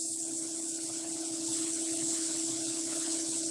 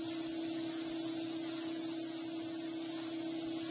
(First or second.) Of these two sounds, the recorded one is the second